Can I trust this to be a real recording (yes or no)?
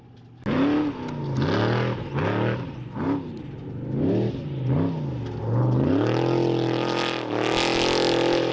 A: yes